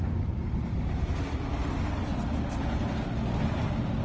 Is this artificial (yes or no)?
no